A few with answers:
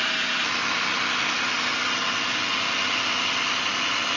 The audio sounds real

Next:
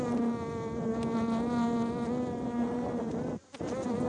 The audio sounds real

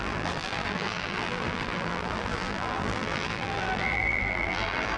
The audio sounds fake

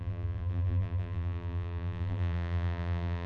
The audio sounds fake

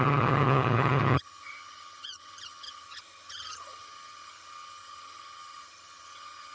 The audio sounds fake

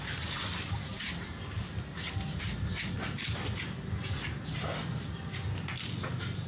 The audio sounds real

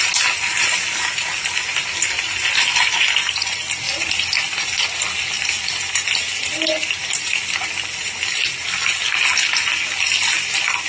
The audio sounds real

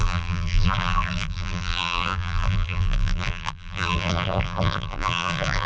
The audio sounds fake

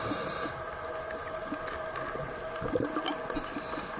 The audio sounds real